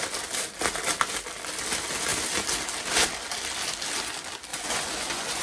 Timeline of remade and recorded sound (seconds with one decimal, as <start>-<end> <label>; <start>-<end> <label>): 0.0-4.5 recorded; 4.5-5.4 remade